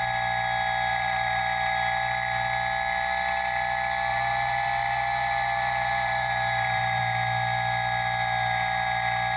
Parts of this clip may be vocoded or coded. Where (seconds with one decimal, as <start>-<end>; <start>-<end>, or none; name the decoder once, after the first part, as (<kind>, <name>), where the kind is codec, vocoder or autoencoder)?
0.9-1.4 (vocoder, BigVGAN v2); 4.1-7.0